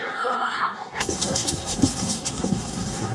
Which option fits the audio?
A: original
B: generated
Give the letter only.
B